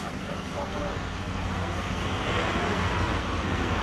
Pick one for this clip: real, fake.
fake